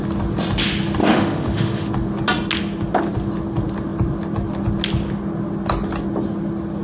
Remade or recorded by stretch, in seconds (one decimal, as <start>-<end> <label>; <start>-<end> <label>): 0.0-1.0 recorded; 1.0-1.9 remade; 1.9-6.8 recorded